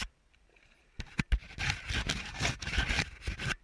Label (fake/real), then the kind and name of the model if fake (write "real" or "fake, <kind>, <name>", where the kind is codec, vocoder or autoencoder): real